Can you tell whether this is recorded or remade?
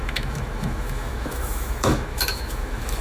remade